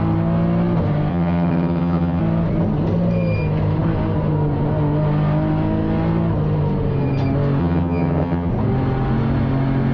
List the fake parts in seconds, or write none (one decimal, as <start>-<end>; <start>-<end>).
1.1-2.2; 7.6-8.5